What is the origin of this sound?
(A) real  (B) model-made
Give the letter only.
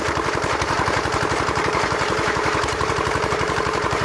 B